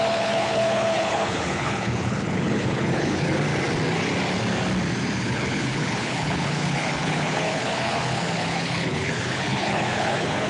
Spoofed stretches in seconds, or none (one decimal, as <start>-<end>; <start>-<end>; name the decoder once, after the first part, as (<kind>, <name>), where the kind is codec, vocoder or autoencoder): 0.0-3.5 (codec, HILCodec); 5.2-10.5